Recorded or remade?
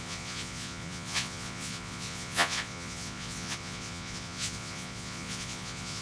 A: remade